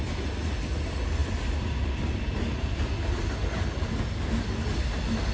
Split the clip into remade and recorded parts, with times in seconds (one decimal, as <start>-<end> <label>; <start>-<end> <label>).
0.0-5.3 recorded